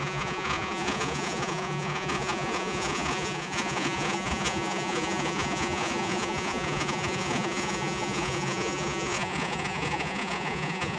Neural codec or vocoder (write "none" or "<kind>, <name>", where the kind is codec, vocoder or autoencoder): vocoder, Vocos